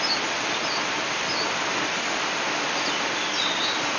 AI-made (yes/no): no